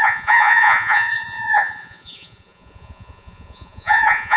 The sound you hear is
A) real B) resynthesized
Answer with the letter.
B